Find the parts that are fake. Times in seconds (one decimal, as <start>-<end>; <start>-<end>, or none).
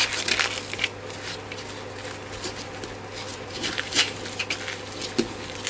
3.3-4.4